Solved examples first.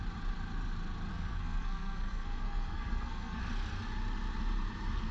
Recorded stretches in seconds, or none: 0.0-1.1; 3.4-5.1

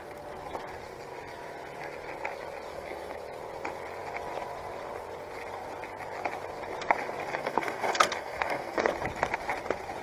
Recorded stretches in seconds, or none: 0.0-2.7; 3.2-7.3; 8.9-10.0

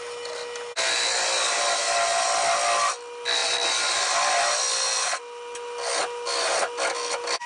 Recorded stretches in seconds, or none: 0.0-7.5

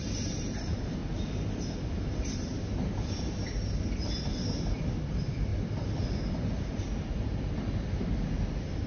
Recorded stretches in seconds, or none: 0.0-8.9

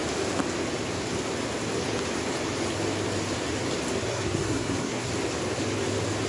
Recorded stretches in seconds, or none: 0.0-4.1; 5.1-6.3

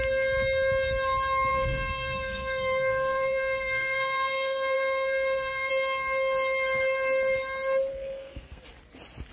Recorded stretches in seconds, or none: 0.0-1.5; 5.7-7.9; 8.6-9.3

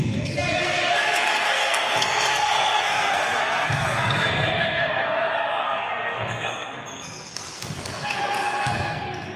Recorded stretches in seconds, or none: none

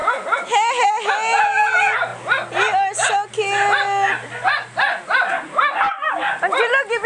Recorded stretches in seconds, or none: 0.0-7.1